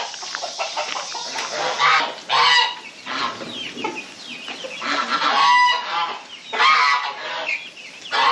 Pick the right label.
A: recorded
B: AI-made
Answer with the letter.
A